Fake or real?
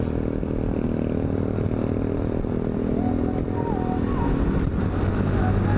real